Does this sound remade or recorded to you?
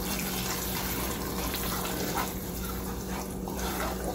remade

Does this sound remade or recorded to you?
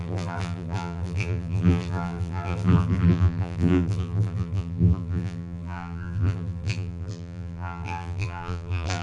remade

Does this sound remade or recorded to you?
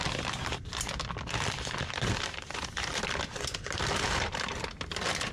remade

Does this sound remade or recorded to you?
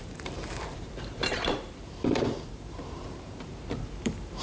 remade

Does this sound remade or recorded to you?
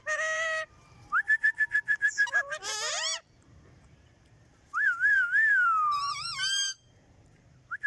remade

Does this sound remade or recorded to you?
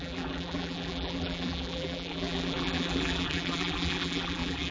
remade